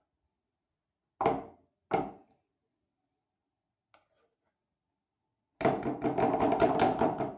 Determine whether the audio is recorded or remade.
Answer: recorded